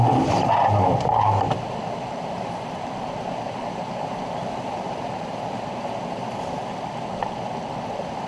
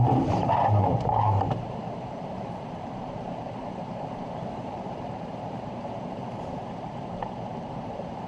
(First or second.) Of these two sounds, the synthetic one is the second